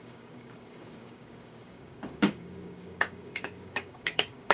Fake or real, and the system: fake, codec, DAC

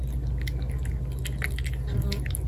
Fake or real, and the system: real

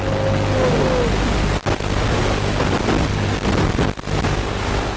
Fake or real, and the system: real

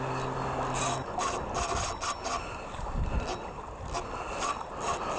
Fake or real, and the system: real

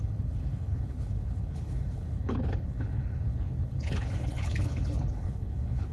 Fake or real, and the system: fake, codec, HILCodec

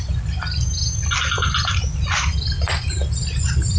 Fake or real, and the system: real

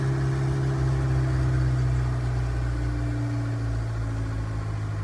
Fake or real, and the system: real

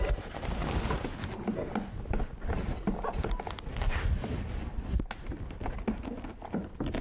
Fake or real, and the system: real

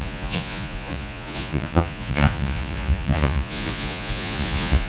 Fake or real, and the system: fake, vocoder, Vocos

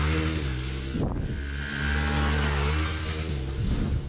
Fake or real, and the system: real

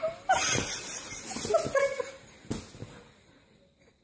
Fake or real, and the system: real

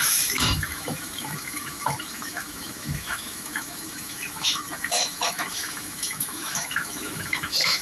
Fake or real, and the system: fake, autoencoder, DAC-VAE